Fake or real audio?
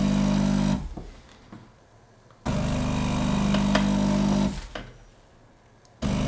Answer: real